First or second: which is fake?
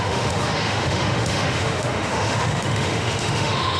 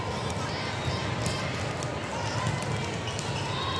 first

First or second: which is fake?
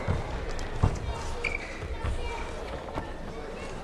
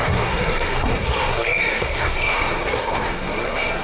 second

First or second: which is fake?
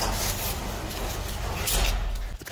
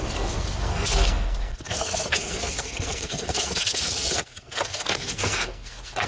second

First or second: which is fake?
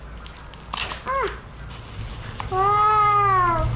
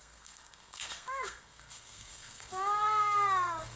second